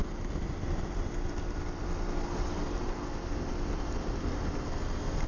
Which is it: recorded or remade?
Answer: recorded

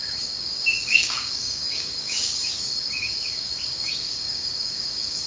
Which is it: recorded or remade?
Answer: remade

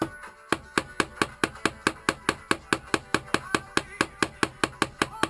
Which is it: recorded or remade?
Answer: recorded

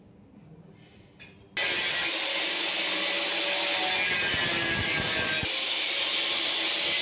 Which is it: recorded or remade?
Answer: recorded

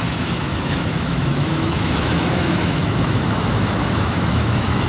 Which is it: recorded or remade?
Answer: remade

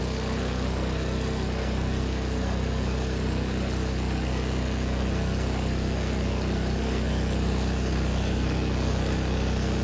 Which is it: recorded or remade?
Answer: remade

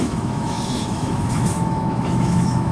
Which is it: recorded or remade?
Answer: remade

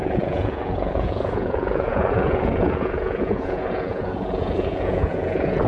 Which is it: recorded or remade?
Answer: remade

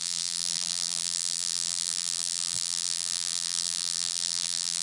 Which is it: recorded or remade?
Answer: remade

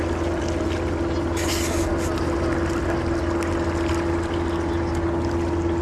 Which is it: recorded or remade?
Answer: recorded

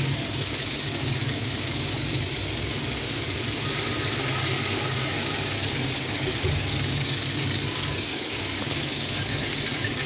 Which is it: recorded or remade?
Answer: remade